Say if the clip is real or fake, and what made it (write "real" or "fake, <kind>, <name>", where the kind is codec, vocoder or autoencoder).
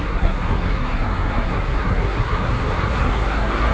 fake, codec, SNAC